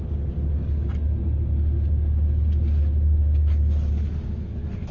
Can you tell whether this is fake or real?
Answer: real